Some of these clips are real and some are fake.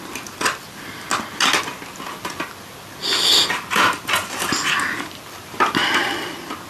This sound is real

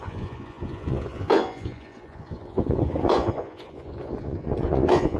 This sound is fake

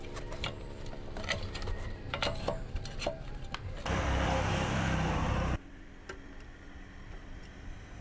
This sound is fake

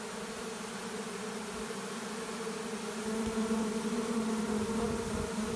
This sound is real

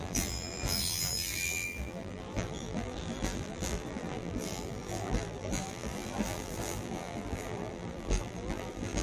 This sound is fake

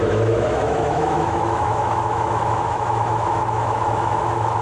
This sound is fake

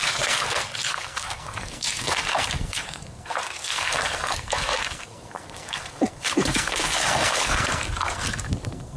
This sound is fake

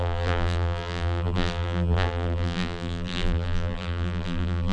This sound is fake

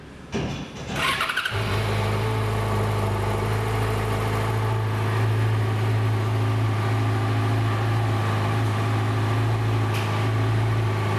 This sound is real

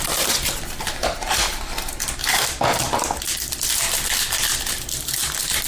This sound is real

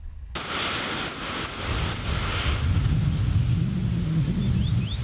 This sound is real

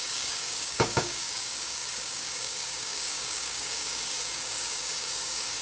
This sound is fake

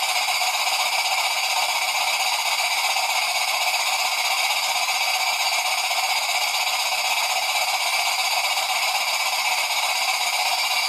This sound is real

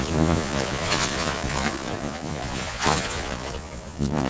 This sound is fake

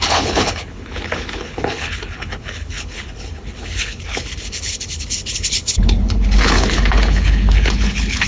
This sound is fake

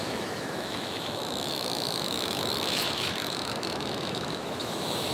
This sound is fake